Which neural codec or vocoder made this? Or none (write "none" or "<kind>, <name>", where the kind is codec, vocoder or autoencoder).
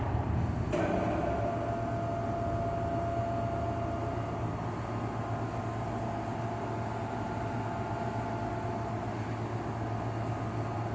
none